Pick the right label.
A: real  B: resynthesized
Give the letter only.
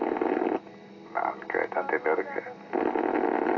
A